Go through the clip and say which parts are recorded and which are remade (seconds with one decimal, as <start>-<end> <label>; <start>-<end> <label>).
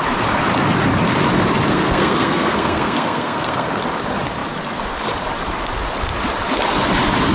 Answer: 0.0-1.7 recorded; 1.7-3.8 remade; 3.8-7.3 recorded